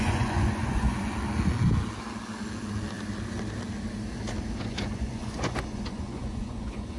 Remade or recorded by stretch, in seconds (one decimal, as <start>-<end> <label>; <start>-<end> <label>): 0.0-1.1 remade; 1.1-4.6 recorded; 4.6-7.0 remade